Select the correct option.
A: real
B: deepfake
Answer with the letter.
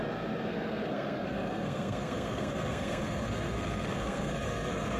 B